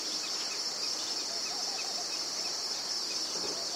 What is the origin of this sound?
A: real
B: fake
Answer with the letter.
B